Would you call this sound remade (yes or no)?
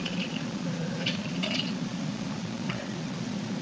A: yes